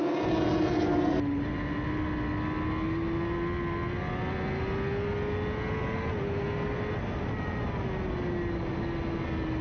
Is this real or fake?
real